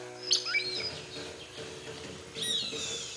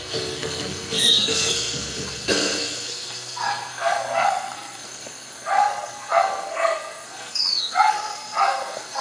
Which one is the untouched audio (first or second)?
first